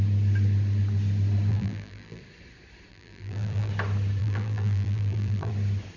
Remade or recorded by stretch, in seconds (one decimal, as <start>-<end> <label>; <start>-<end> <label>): 0.0-1.5 recorded; 1.5-2.2 remade; 2.2-2.9 recorded; 2.9-3.7 remade; 3.7-4.2 recorded; 4.2-5.5 remade; 5.5-6.0 recorded